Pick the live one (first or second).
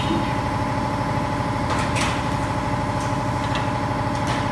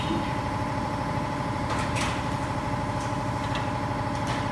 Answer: first